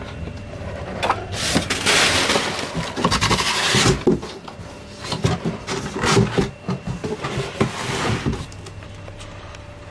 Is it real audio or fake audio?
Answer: real